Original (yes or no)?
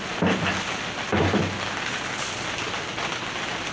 yes